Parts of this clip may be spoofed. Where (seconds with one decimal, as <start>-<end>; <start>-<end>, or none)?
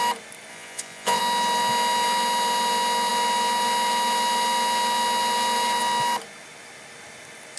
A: 0.5-1.2